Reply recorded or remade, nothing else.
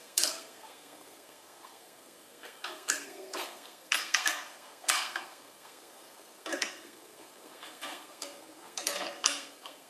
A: remade